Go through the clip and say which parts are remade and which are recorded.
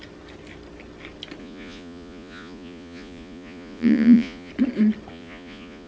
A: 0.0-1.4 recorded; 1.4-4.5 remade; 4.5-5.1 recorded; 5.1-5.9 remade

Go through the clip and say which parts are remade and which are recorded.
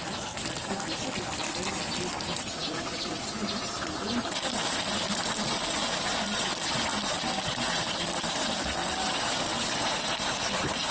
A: 0.0-10.9 recorded